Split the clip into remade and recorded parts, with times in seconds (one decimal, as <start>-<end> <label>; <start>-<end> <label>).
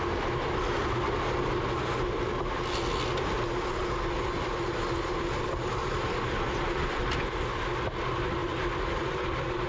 0.0-5.8 recorded; 5.8-7.0 remade; 7.0-8.4 recorded; 8.4-9.7 remade